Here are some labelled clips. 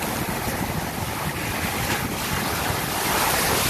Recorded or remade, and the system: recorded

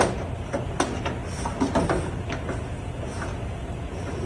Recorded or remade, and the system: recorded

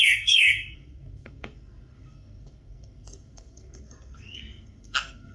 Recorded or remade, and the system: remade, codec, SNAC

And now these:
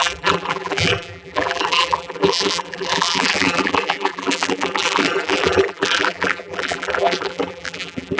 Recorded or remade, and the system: remade, vocoder, BigVGAN v2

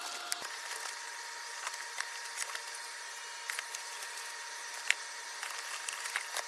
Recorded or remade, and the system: recorded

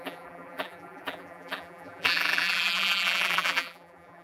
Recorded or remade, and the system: remade, vocoder, BigVGAN v2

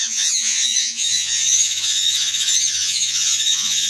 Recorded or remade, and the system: remade, vocoder, Vocos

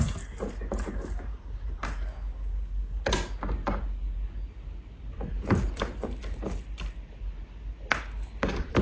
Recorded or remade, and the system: recorded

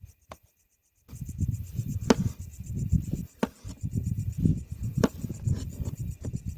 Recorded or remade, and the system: recorded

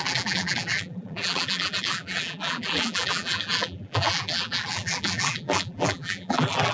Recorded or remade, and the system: remade, vocoder, BigVGAN v2